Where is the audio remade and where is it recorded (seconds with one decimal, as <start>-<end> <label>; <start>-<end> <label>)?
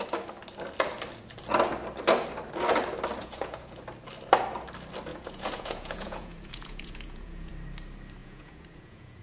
0.0-3.2 recorded; 3.2-3.8 remade; 3.8-5.1 recorded; 5.1-7.5 remade; 7.5-8.2 recorded; 8.2-9.2 remade